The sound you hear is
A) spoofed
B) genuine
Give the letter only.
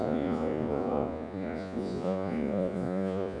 A